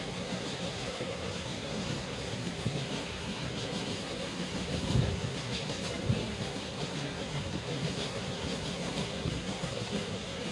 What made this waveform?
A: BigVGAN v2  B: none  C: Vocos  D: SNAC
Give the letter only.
D